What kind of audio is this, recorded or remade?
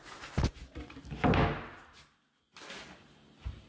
recorded